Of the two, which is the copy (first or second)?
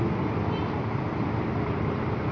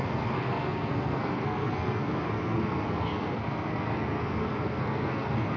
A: second